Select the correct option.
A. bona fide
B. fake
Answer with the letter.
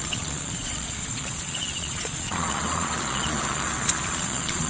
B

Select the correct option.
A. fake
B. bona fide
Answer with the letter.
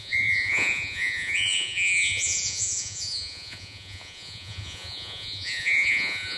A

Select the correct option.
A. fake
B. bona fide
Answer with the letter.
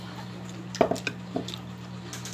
B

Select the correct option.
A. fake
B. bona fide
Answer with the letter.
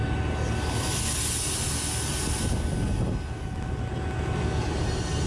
B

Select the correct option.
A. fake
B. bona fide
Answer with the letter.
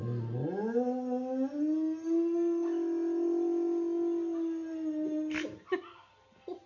B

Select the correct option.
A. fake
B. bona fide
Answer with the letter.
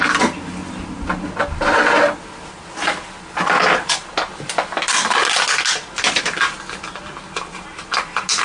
B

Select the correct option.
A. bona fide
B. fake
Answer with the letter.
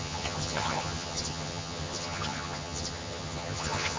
B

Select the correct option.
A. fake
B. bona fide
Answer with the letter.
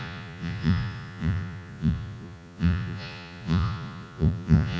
A